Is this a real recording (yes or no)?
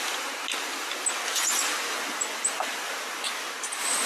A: yes